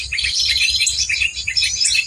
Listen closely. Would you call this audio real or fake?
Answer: real